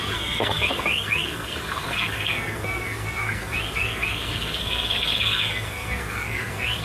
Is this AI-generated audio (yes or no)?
yes